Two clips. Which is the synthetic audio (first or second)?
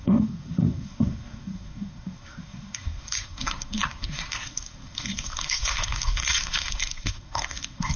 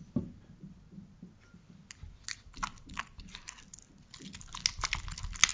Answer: first